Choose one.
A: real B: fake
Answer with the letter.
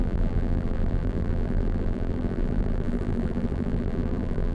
B